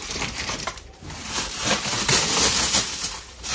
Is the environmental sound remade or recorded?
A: remade